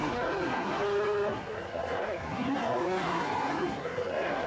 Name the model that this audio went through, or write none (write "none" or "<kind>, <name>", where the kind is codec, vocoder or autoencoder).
codec, SNAC